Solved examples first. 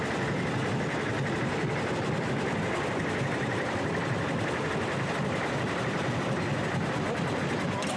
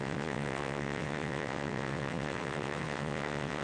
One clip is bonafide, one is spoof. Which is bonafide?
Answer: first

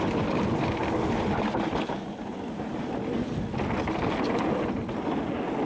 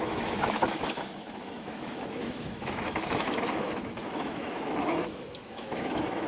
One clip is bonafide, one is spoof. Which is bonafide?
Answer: first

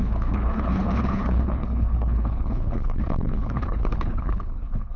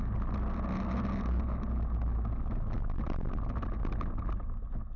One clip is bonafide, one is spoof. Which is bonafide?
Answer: second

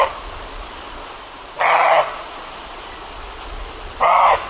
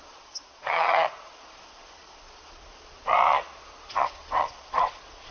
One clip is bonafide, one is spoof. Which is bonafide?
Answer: first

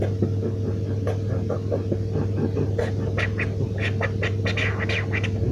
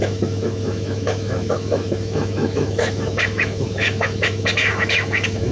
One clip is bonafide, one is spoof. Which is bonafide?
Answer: first